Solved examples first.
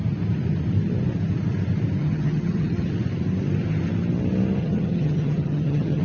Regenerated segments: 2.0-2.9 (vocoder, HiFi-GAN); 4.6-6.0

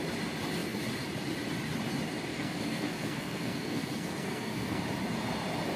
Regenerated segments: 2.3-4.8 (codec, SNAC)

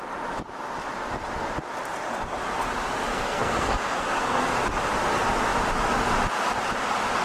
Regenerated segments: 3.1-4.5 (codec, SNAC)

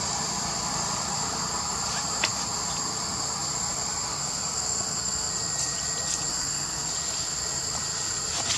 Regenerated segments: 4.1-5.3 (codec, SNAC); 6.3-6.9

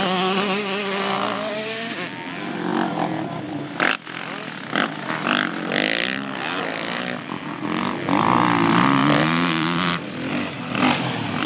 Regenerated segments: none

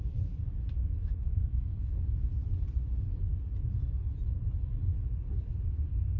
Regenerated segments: 1.0-2.0 (codec, SNAC)